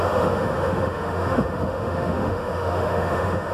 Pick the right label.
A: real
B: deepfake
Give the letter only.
B